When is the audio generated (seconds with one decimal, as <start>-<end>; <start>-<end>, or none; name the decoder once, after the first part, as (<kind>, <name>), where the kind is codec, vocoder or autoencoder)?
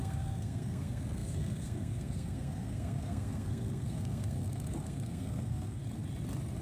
0.0-5.8 (codec, SNAC)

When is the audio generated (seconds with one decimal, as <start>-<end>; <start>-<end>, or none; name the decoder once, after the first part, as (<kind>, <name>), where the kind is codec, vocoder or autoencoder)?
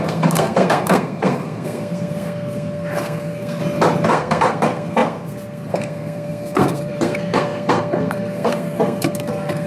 0.0-3.6 (codec, SNAC); 4.1-9.7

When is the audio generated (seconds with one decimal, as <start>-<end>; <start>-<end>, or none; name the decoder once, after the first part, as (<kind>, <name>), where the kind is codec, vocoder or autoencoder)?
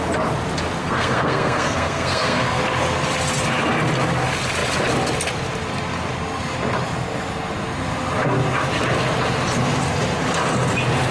0.8-2.6 (codec, SNAC)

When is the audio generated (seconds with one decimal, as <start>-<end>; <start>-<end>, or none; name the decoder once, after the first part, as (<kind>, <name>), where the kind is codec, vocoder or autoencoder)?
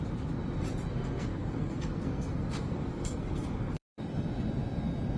0.9-4.0 (codec, SNAC)